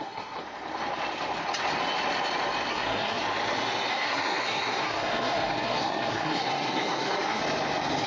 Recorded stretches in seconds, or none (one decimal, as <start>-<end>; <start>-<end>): 0.4-2.7; 3.2-3.9; 7.4-8.1